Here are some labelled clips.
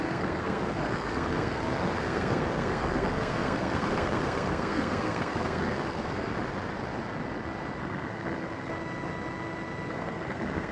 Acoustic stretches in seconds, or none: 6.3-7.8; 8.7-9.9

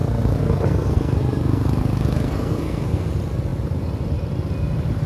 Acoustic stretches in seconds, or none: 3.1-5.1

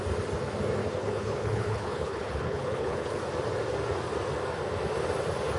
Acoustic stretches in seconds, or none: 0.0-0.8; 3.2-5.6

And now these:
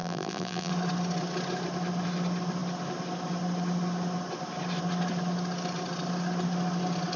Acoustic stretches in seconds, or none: 0.7-7.2

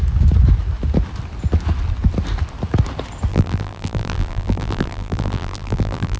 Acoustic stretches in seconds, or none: 0.0-3.3